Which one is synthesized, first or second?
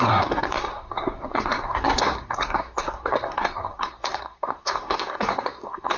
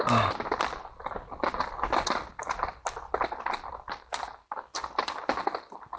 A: first